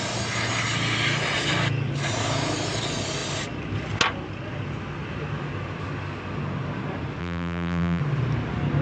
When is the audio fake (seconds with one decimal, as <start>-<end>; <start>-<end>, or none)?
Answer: 7.2-8.0